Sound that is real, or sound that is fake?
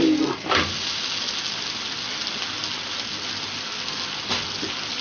real